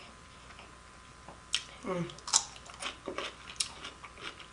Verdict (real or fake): real